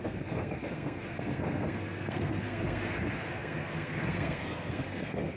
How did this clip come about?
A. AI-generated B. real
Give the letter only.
A